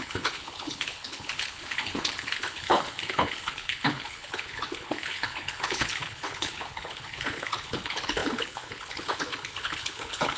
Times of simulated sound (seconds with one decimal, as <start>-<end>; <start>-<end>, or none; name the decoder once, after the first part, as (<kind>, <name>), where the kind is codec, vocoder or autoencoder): 0.0-10.4 (codec, HILCodec)